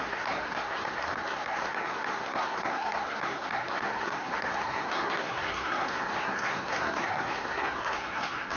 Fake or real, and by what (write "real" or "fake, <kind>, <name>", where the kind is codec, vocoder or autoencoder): fake, codec, SNAC